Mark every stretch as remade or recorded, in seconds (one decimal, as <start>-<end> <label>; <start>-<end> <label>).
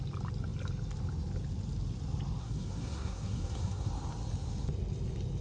0.0-2.4 recorded; 2.4-3.9 remade; 3.9-5.4 recorded